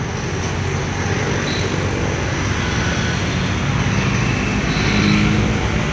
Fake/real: real